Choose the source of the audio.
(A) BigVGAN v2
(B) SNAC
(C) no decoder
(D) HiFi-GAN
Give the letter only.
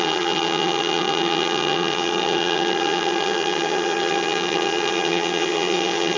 D